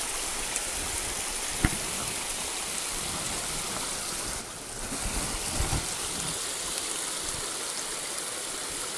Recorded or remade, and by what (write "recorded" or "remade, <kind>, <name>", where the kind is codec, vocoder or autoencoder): recorded